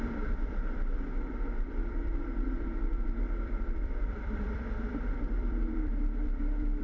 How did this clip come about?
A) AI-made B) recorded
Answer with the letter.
A